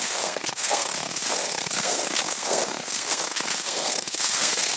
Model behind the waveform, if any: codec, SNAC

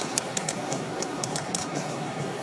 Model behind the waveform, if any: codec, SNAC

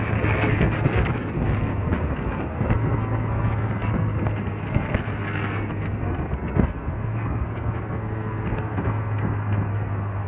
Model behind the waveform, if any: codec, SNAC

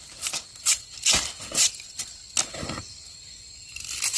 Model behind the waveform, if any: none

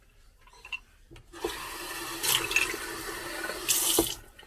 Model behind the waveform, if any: none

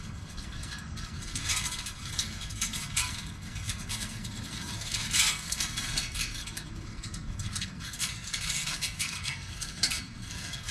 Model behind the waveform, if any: codec, SNAC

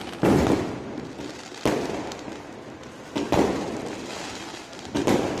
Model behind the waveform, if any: none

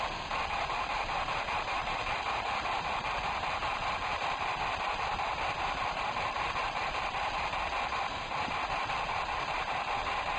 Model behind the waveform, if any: none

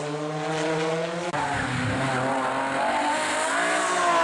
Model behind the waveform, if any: none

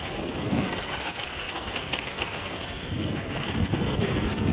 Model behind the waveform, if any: codec, SNAC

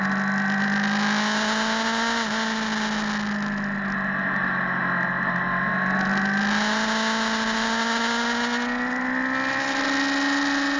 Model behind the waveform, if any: none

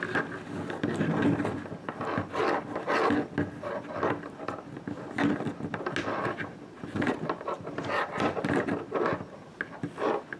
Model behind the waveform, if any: none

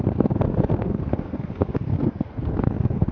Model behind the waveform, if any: codec, SNAC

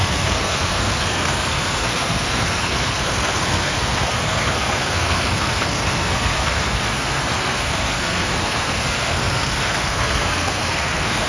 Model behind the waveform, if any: codec, SNAC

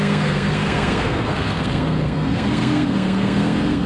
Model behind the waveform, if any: codec, SNAC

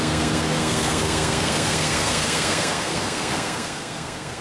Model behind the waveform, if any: codec, SNAC